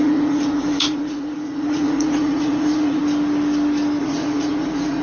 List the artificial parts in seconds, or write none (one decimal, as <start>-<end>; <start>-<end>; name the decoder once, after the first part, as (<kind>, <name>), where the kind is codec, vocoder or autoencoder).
0.0-3.0 (vocoder, Vocos); 4.0-5.0